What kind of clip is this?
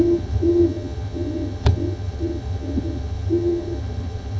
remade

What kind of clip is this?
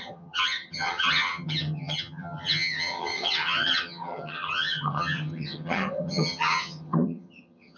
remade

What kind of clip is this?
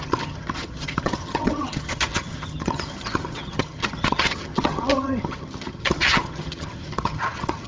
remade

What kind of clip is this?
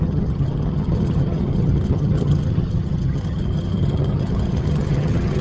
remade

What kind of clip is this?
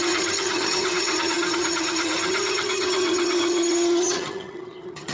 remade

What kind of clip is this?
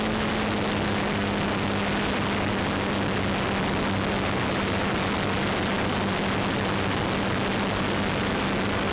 recorded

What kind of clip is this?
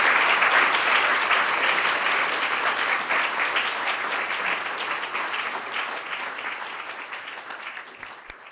recorded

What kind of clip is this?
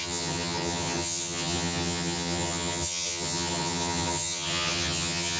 remade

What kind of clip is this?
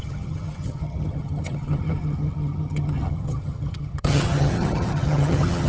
remade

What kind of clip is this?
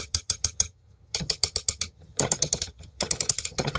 remade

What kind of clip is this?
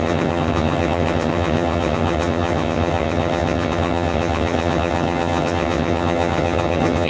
remade